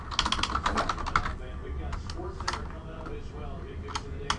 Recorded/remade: recorded